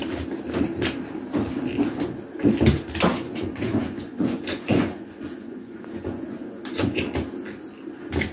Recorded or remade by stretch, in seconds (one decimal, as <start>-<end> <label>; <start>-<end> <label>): 0.0-3.1 recorded; 3.1-7.0 remade; 7.0-8.3 recorded